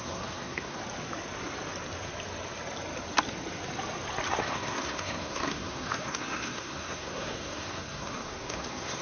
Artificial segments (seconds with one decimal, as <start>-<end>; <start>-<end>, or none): 0.0-0.8; 4.3-9.0